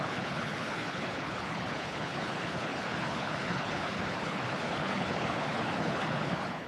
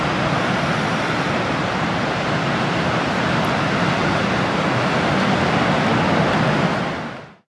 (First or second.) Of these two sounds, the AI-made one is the first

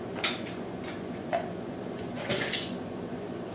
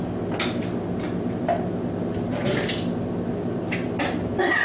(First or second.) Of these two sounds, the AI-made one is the first